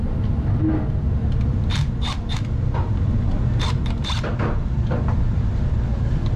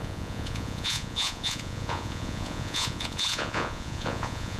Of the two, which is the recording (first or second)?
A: first